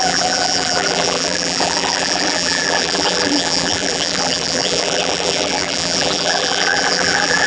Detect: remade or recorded remade